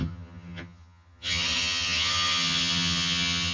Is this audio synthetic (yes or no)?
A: yes